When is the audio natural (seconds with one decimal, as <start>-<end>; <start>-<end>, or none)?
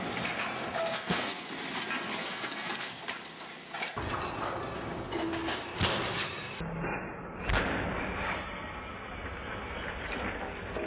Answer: 0.0-0.8; 1.5-2.2; 3.0-10.9